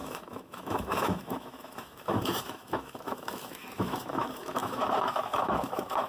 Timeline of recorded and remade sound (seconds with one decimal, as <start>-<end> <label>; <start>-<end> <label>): 0.0-6.1 remade